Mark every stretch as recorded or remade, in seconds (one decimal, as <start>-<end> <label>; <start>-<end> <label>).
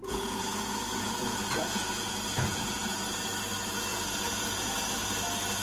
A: 0.0-3.4 remade; 3.4-3.9 recorded; 3.9-4.9 remade; 4.9-5.6 recorded